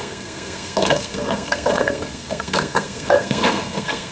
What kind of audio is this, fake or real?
fake